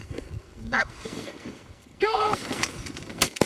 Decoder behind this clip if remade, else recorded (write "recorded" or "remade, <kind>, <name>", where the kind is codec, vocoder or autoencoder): remade, codec, SNAC